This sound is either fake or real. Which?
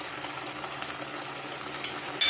real